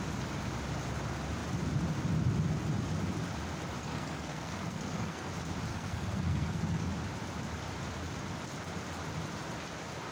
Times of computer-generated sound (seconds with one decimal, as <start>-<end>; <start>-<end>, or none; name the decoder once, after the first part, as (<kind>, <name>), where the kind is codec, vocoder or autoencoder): 3.8-5.3 (codec, SNAC); 5.7-6.9